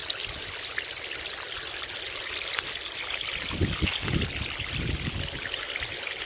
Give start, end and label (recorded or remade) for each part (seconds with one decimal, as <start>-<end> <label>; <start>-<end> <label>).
0.0-6.3 recorded